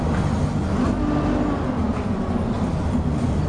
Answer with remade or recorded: recorded